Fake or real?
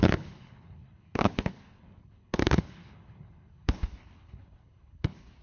fake